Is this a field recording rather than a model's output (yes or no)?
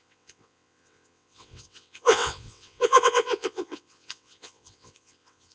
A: no